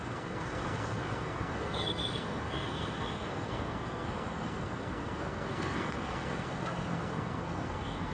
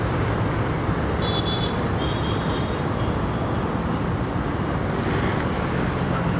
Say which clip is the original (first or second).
second